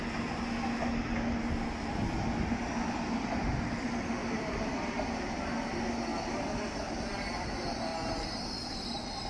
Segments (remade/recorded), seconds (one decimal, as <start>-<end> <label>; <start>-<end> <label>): 0.0-4.2 recorded; 4.2-5.4 remade; 5.4-7.9 recorded; 7.9-8.8 remade; 8.8-9.3 recorded